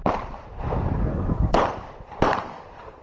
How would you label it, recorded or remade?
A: remade